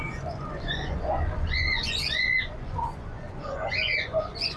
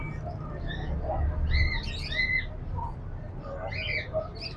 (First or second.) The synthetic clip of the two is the first